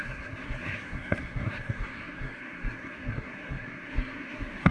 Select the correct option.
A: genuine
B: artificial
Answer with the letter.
B